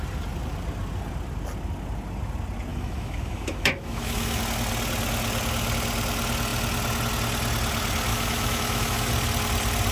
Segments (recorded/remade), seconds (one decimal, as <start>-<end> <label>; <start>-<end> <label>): 0.0-2.7 recorded; 2.7-4.4 remade; 4.4-8.1 recorded; 8.1-9.1 remade; 9.1-9.9 recorded